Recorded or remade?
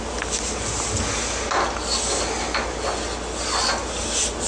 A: recorded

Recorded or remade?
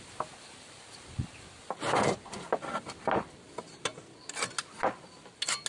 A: recorded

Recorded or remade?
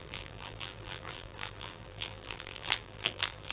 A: remade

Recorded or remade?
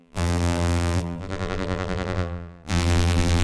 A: remade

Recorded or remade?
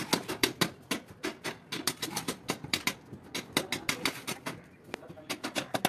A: recorded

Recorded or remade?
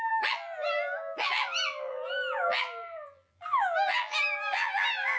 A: remade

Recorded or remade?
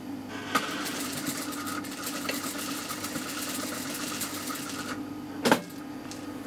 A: recorded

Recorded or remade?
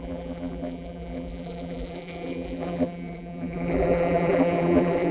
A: remade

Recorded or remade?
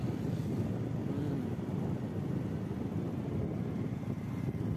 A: recorded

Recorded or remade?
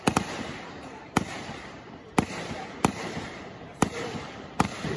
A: remade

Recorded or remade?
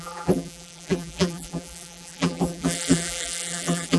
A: remade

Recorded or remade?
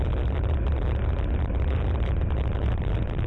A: remade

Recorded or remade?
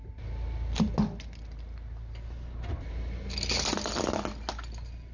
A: recorded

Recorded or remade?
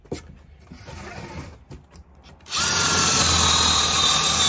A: recorded